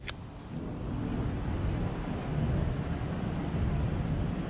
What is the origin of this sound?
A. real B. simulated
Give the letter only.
A